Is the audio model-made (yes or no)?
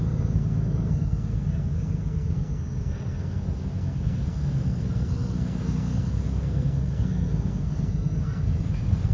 yes